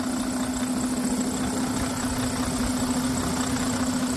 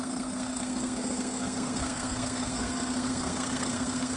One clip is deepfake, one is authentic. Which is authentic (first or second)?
first